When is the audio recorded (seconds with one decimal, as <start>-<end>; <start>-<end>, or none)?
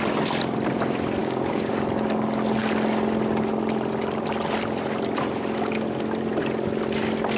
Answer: 0.0-1.2; 1.7-7.4